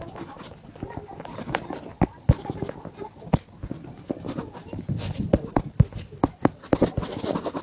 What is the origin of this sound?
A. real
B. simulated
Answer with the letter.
A